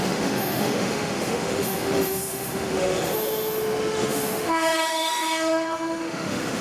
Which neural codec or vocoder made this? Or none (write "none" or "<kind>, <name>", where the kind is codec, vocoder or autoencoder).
autoencoder, DAC-VAE